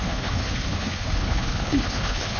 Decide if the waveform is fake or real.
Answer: fake